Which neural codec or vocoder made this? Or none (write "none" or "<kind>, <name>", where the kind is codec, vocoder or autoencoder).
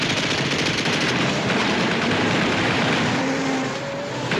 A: vocoder, BigVGAN v2